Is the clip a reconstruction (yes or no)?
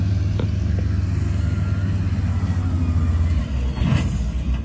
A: no